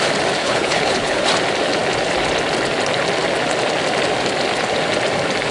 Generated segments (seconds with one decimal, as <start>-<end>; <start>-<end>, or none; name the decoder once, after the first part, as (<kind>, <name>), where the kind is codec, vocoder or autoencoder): 0.4-1.3 (codec, HILCodec)